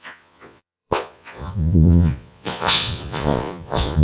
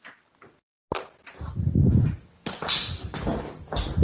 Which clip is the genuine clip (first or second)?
second